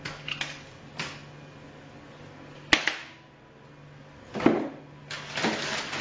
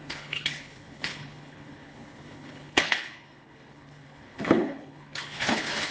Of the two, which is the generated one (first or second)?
second